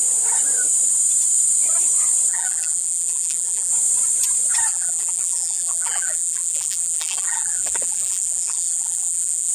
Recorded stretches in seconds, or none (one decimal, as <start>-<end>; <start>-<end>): 0.0-2.3; 3.7-4.7